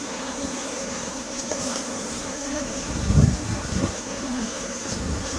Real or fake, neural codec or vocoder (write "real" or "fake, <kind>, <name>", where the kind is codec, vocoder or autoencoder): fake, codec, SNAC